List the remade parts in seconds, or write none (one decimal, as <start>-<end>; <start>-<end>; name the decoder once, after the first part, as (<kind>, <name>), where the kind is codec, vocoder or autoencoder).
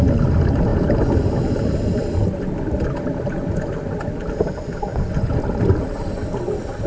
4.9-5.4 (vocoder, Vocos)